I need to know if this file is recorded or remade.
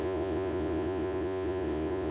remade